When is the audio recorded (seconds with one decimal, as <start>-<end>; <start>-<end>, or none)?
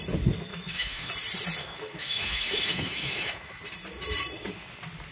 0.0-0.5; 1.1-1.6; 3.6-5.1